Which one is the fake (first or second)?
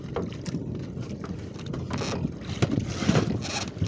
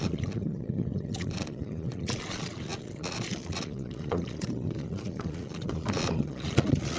second